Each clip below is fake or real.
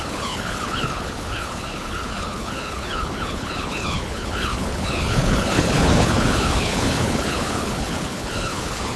fake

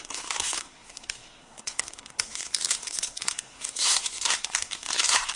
fake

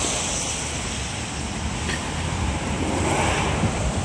real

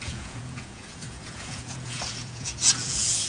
fake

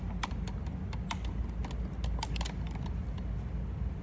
real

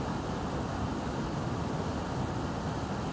real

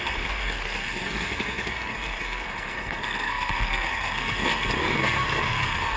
fake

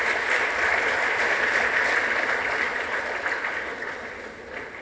real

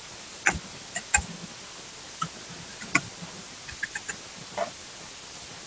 real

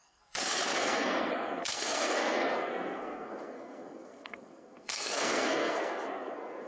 fake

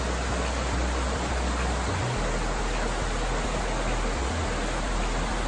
real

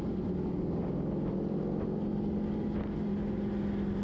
real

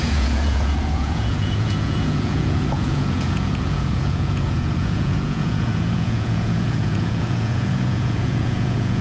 fake